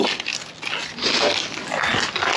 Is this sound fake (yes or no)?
no